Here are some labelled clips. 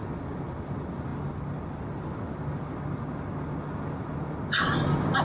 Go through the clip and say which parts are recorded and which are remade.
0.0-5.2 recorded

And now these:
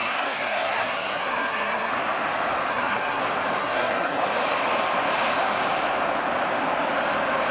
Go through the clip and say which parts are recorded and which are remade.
0.0-1.9 remade; 1.9-2.7 recorded; 2.7-3.2 remade; 3.2-3.6 recorded; 3.6-4.2 remade; 4.2-7.5 recorded

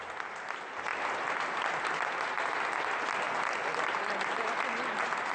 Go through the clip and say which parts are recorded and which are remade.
0.0-5.3 recorded

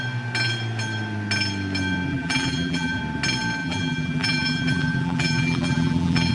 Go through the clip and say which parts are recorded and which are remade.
0.0-2.1 recorded; 2.1-3.0 remade; 3.0-3.6 recorded; 3.6-6.3 remade